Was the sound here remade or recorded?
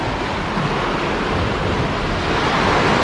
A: recorded